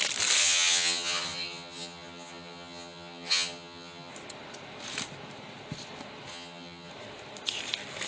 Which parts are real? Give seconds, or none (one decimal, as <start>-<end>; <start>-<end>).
0.0-0.4; 4.1-6.3; 6.9-8.1